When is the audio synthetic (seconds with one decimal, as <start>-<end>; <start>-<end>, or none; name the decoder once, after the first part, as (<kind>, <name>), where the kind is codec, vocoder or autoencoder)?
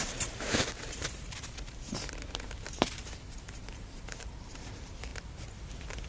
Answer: 0.0-5.1 (vocoder, BigVGAN v2)